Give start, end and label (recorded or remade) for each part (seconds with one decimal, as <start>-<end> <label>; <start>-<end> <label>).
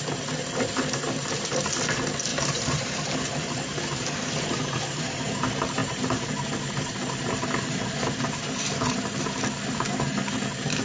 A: 0.0-2.3 recorded; 2.3-5.2 remade; 5.2-5.8 recorded; 5.8-9.1 remade; 9.1-10.8 recorded